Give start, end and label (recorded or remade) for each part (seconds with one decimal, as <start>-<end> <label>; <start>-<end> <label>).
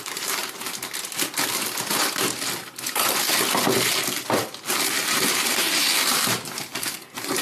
0.0-0.4 remade; 0.4-4.7 recorded; 4.7-7.4 remade